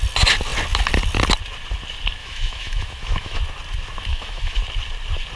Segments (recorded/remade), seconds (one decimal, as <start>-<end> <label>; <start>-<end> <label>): 0.0-2.2 recorded; 2.2-3.4 remade; 3.4-4.1 recorded; 4.1-4.6 remade; 4.6-5.4 recorded